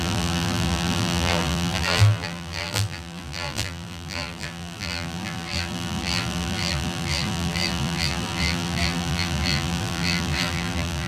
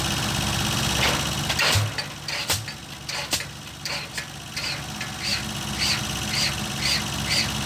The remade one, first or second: first